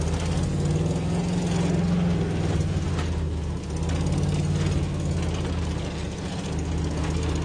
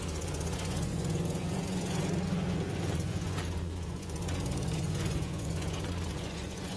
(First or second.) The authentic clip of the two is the first